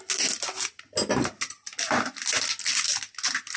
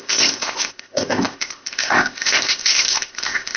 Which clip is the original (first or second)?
first